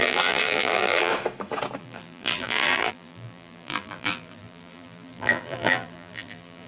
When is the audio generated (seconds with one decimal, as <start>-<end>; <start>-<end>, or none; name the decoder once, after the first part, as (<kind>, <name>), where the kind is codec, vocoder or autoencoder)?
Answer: 0.0-1.1 (vocoder, BigVGAN v2); 1.8-6.7